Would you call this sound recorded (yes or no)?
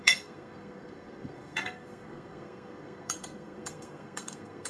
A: no